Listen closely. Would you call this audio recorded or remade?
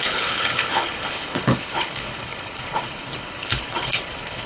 remade